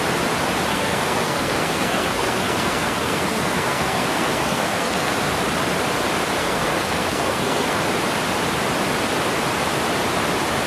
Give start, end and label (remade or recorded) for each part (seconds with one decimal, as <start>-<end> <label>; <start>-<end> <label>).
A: 0.0-0.7 recorded; 0.7-5.1 remade; 5.1-6.4 recorded; 6.4-7.8 remade; 7.8-10.7 recorded

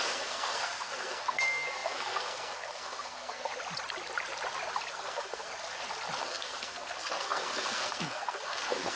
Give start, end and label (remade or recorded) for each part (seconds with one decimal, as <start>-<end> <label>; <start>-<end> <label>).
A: 0.0-3.5 remade; 3.5-4.9 recorded; 4.9-5.5 remade; 5.5-6.2 recorded; 6.2-9.0 remade